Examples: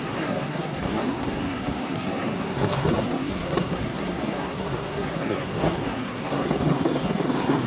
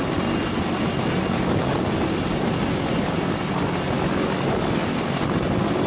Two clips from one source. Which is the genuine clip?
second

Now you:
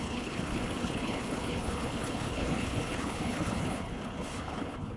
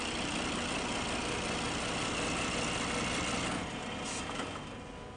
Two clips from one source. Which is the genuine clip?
second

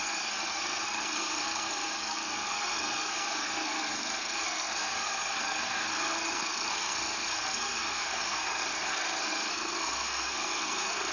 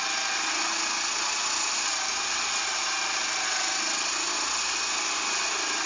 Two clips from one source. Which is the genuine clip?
second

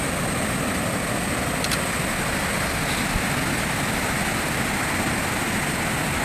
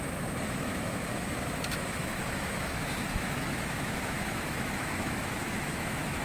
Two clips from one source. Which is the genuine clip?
first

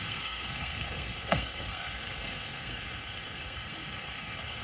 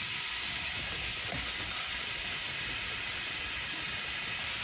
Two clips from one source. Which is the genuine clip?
second